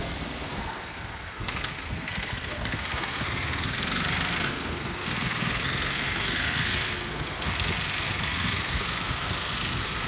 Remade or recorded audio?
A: remade